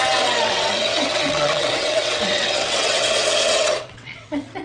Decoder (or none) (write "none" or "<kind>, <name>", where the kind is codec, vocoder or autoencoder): vocoder, WaveNeXt